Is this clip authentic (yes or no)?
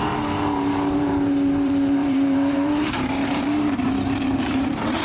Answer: no